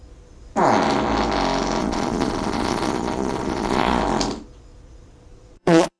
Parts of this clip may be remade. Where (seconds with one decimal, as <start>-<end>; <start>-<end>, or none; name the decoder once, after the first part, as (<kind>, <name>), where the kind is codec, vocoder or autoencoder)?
1.8-4.0 (vocoder, Vocos); 5.3-6.0